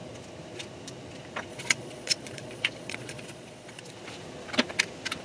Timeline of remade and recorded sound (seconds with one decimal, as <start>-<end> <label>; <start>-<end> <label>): 0.0-1.5 recorded; 1.5-3.8 remade; 3.8-5.2 recorded